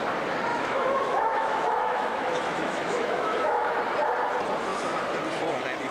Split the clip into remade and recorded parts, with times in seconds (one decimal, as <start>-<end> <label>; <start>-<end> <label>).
0.0-0.5 recorded; 0.5-3.7 remade; 3.7-5.9 recorded